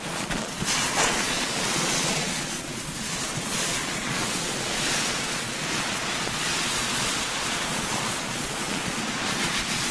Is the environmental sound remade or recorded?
remade